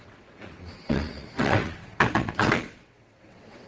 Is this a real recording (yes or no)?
no